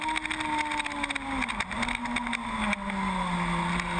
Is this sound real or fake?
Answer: real